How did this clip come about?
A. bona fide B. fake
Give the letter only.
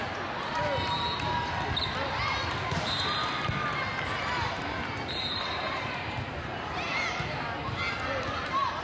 A